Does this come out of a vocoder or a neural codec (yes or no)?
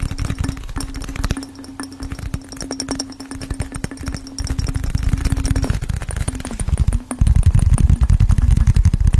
no